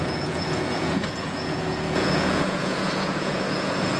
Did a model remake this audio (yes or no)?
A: yes